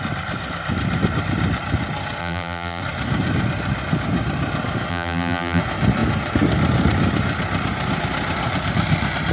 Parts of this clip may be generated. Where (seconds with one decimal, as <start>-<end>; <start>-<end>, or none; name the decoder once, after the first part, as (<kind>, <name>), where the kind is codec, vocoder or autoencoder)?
2.2-2.8 (vocoder, BigVGAN v2); 4.9-5.6